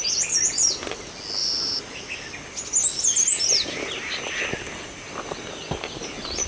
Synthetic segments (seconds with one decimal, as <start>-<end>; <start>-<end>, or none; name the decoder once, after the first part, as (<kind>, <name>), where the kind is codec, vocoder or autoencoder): 1.4-2.0 (vocoder, BigVGAN v2)